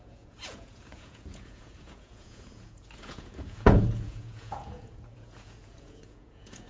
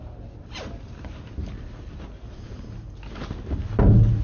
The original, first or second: second